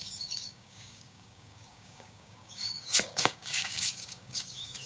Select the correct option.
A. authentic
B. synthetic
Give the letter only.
B